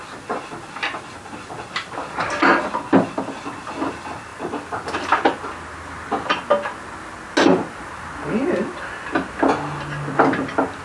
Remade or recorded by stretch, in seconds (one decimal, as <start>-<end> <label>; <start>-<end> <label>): 0.0-10.8 recorded